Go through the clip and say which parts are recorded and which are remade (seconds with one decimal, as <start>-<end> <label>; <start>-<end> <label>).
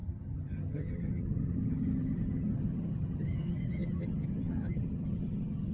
0.0-5.7 remade